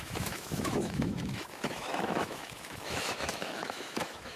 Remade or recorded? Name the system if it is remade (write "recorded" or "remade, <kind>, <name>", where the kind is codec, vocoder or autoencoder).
remade, autoencoder, DAC-VAE